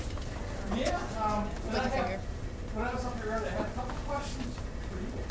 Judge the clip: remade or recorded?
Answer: recorded